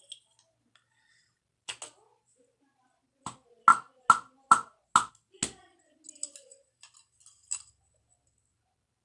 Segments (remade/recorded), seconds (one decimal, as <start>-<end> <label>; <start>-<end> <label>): 0.0-9.0 recorded